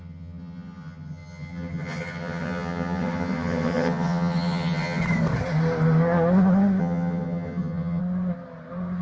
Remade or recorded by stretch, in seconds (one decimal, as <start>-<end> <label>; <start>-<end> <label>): 0.0-5.0 remade; 5.0-6.8 recorded; 6.8-8.0 remade; 8.0-9.0 recorded